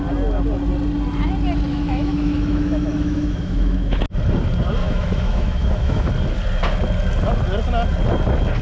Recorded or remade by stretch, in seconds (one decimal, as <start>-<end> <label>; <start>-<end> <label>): 0.0-1.7 recorded; 1.7-4.0 remade; 4.0-4.8 recorded; 4.8-6.1 remade; 6.1-8.6 recorded